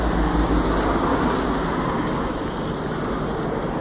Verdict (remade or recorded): recorded